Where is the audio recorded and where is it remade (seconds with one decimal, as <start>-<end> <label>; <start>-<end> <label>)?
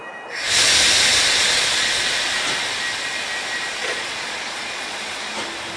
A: 0.0-1.1 recorded; 1.1-2.1 remade; 2.1-3.8 recorded; 3.8-5.3 remade; 5.3-5.8 recorded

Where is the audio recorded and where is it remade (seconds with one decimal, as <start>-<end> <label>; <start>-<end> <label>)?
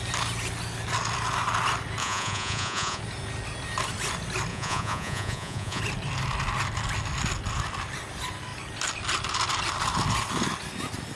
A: 0.0-2.0 recorded; 2.0-3.0 remade; 3.0-4.5 recorded; 4.5-5.8 remade; 5.8-11.2 recorded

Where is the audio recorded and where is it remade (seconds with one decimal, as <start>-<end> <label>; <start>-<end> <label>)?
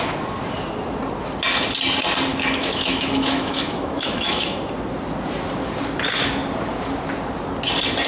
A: 0.0-2.3 recorded; 2.3-4.6 remade; 4.6-8.1 recorded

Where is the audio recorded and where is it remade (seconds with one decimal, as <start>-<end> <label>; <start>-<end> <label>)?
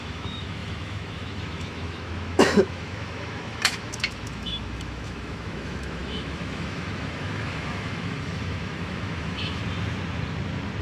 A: 0.0-9.6 remade; 9.6-10.8 recorded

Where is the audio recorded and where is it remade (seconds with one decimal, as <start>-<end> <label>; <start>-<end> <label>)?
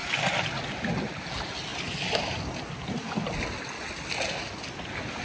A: 0.0-5.2 recorded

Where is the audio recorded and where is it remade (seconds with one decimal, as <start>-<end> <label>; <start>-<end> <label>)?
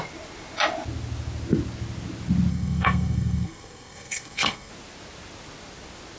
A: 0.0-2.5 recorded; 2.5-4.7 remade; 4.7-6.2 recorded